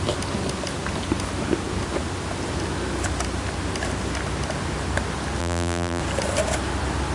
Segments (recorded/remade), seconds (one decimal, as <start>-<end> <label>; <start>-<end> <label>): 0.0-5.4 recorded; 5.4-6.0 remade; 6.0-7.1 recorded